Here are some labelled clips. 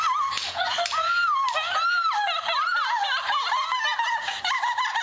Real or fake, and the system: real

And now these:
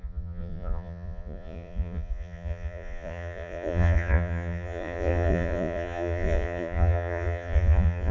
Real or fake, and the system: fake, vocoder, Vocos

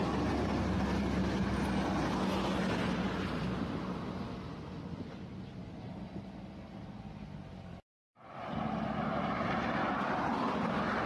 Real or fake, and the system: real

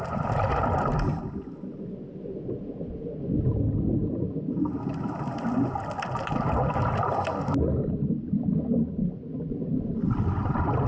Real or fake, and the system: real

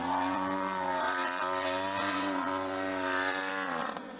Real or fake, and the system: fake, vocoder, Vocos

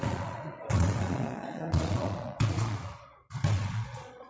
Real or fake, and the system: fake, vocoder, Vocos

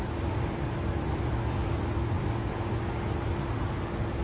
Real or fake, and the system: real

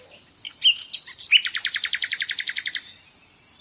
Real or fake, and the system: real